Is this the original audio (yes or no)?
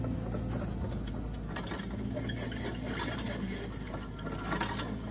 yes